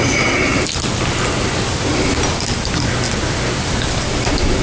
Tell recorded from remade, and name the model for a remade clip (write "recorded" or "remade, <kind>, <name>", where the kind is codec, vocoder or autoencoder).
recorded